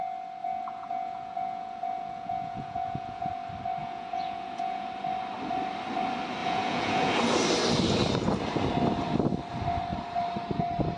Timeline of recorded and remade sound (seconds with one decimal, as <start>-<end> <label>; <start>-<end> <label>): 0.0-0.4 recorded; 0.4-3.3 remade; 3.3-3.8 recorded; 3.8-4.9 remade; 4.9-6.4 recorded; 6.4-7.1 remade; 7.1-11.0 recorded